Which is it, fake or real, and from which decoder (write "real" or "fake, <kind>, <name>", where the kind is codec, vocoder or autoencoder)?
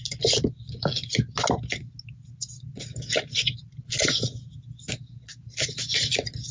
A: real